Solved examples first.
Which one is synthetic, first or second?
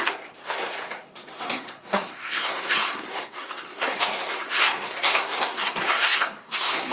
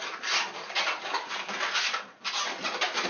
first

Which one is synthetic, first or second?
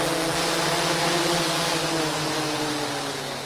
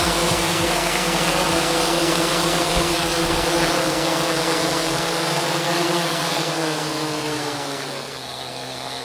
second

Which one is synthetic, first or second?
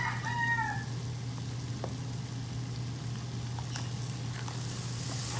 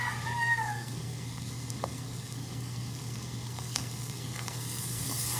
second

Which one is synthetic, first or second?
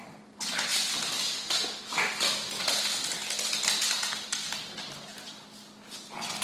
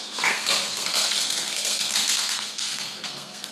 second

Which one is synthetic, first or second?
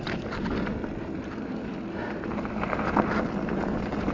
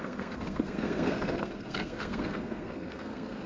second